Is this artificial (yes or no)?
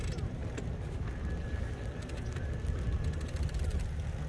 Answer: no